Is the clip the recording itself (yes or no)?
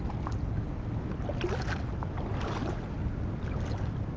yes